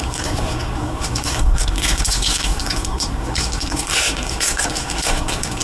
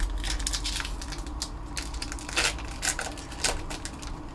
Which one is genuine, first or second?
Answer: second